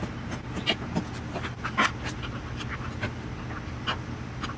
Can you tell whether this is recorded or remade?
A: recorded